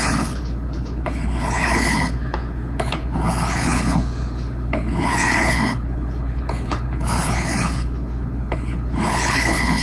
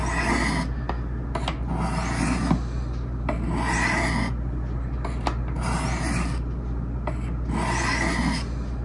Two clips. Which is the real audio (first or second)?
second